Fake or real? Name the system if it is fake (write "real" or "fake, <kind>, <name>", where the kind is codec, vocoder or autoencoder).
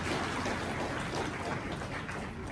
real